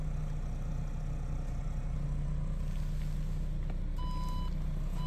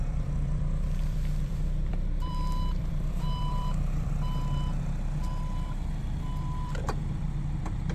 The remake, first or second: second